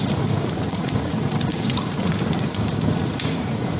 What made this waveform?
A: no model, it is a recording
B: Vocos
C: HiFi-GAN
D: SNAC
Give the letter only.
B